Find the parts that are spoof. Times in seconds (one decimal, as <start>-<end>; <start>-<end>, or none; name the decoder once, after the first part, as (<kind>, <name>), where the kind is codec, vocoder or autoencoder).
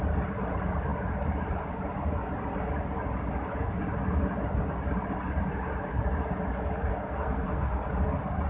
6.9-7.7 (codec, SNAC)